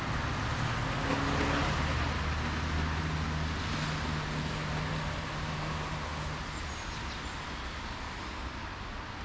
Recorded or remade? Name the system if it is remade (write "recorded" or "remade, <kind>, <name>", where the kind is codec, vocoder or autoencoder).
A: recorded